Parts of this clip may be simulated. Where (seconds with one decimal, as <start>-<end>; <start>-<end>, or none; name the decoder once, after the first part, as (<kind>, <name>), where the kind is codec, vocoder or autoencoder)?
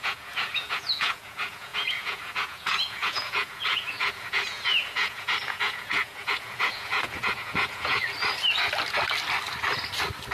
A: 0.0-8.0 (vocoder, Vocos)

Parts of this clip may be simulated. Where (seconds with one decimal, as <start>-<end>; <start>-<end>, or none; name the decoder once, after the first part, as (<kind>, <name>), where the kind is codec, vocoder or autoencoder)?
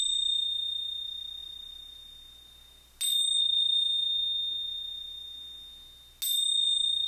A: none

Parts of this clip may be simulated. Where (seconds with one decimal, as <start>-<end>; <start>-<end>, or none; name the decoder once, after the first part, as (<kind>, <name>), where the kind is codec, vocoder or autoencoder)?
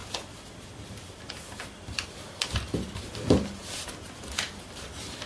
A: 0.0-1.1 (vocoder, BigVGAN v2); 3.6-4.6